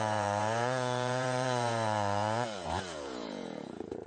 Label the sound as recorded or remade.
remade